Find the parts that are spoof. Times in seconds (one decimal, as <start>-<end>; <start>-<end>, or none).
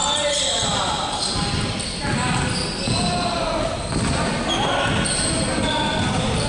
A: none